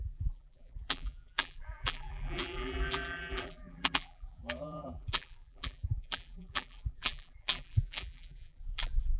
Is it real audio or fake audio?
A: fake